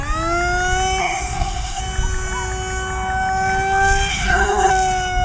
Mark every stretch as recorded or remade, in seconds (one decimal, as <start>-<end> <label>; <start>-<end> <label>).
0.0-1.0 recorded; 1.0-1.8 remade; 1.8-4.1 recorded; 4.1-4.7 remade; 4.7-5.2 recorded